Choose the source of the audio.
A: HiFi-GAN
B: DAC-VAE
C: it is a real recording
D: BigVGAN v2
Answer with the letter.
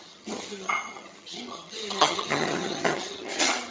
A